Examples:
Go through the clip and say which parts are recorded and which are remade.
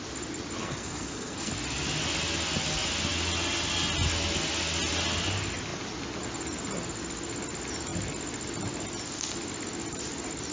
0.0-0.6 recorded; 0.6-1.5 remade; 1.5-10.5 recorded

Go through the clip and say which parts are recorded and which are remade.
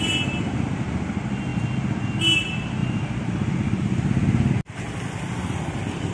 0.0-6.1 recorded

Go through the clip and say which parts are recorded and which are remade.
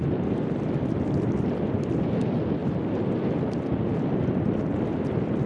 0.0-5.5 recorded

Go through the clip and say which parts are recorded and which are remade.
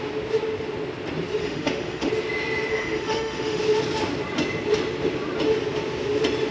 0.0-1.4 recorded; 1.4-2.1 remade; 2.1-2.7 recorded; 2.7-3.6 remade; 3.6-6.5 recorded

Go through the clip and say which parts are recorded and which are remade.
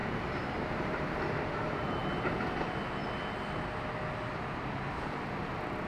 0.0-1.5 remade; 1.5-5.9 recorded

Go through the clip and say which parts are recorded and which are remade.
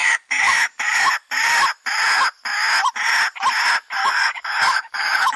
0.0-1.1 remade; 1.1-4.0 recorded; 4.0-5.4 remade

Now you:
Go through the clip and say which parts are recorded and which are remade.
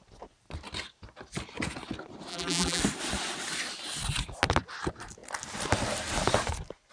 0.0-2.3 recorded; 2.3-2.8 remade; 2.8-6.9 recorded